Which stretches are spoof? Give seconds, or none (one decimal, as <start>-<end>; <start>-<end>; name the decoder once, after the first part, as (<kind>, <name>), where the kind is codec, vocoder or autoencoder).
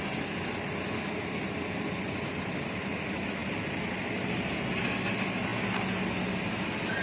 none